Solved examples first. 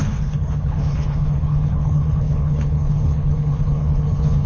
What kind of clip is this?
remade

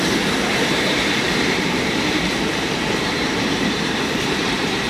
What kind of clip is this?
remade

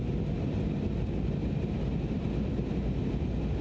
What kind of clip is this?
recorded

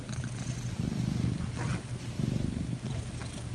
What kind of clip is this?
recorded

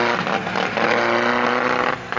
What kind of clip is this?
recorded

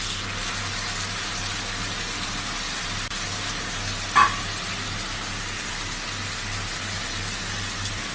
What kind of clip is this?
recorded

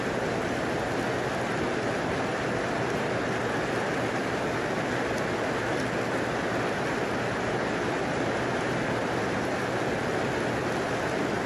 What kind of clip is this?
recorded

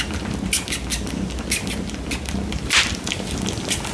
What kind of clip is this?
recorded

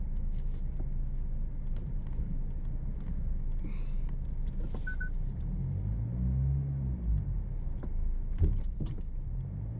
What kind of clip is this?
recorded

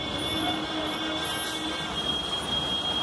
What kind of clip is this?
recorded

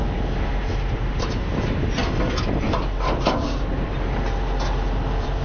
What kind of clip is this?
recorded